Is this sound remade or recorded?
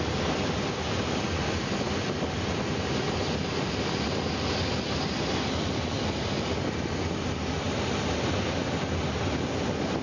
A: recorded